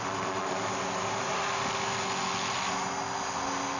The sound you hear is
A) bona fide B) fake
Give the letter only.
A